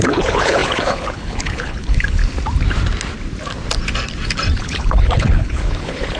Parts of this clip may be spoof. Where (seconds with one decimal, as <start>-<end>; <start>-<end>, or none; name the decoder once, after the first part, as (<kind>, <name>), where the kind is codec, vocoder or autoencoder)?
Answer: 0.0-2.2 (codec, HILCodec); 4.6-6.2